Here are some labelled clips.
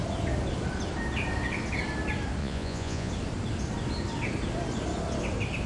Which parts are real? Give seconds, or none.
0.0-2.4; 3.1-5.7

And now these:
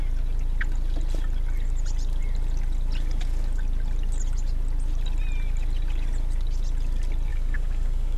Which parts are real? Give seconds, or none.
0.0-7.3